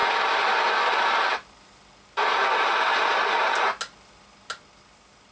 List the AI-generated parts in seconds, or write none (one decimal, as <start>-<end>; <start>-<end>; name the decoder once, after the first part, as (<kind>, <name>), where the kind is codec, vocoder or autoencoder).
none